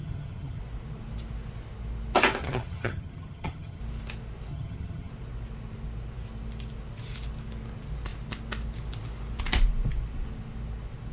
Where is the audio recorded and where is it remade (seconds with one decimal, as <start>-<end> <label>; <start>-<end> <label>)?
0.0-0.6 remade; 0.6-2.4 recorded; 2.4-3.8 remade; 3.8-4.5 recorded; 4.5-5.1 remade; 5.1-11.1 recorded